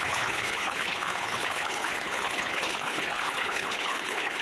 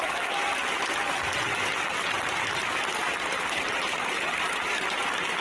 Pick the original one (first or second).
second